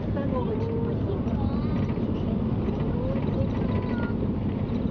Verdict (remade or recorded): recorded